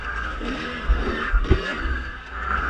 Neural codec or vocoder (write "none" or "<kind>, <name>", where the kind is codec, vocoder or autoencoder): codec, SNAC